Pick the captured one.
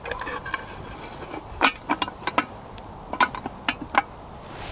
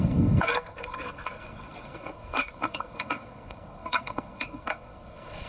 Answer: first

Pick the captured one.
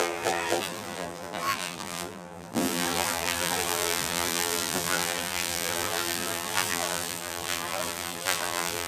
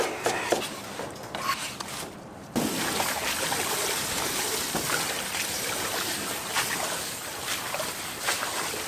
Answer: second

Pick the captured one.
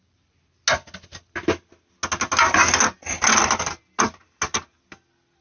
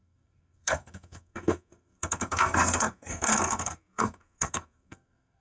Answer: first